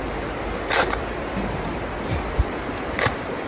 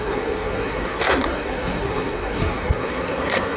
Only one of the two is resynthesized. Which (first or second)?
second